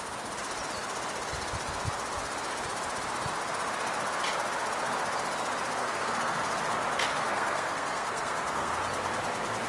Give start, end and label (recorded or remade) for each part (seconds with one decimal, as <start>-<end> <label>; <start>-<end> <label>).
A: 0.0-5.8 recorded; 5.8-6.4 remade; 6.4-7.1 recorded; 7.1-8.7 remade; 8.7-9.7 recorded